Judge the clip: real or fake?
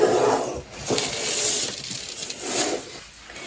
real